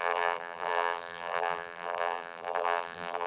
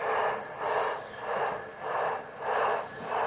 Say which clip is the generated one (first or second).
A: first